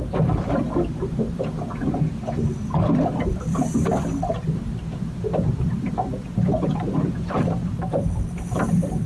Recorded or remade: remade